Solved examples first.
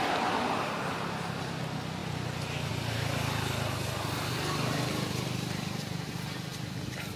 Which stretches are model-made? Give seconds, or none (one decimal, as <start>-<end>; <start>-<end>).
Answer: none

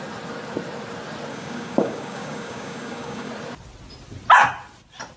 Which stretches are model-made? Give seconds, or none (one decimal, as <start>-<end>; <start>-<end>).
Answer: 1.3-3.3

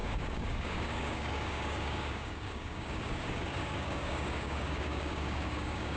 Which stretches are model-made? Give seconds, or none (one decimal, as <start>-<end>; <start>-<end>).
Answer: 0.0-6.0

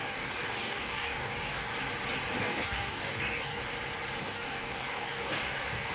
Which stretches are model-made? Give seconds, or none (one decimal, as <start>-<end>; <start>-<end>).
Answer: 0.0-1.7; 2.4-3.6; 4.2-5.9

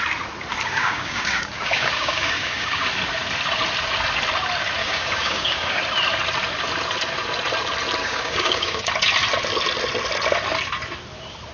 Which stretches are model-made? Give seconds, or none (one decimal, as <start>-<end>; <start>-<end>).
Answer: 0.5-2.9; 4.8-5.8; 8.0-8.9

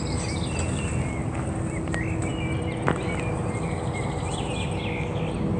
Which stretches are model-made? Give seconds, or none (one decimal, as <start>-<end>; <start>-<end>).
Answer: none